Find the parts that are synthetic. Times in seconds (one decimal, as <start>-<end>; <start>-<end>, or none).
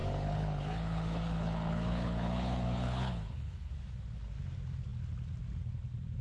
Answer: 0.0-3.7